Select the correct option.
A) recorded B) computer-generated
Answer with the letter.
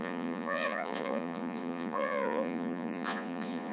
B